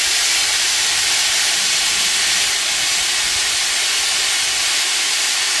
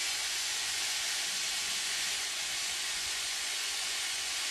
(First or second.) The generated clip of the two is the second